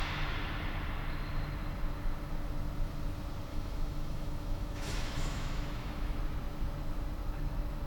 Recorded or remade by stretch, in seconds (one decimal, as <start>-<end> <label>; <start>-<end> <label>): 0.0-3.5 recorded; 3.5-6.2 remade; 6.2-7.9 recorded